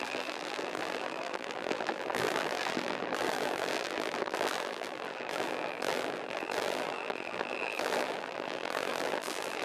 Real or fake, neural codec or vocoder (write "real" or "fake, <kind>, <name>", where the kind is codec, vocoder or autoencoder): fake, vocoder, BigVGAN v2